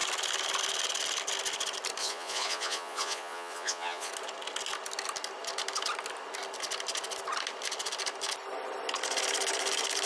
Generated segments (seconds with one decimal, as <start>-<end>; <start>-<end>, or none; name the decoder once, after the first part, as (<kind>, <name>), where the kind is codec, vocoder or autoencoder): 2.0-4.1 (vocoder, Vocos)